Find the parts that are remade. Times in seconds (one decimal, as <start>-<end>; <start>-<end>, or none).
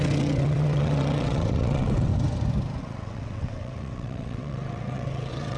0.0-2.1; 2.8-5.6